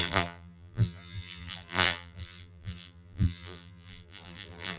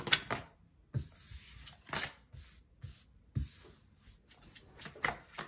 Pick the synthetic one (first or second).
first